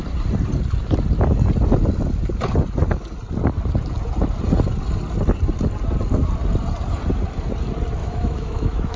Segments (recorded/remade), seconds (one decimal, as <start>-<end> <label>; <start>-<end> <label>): 0.0-8.0 recorded; 8.0-9.0 remade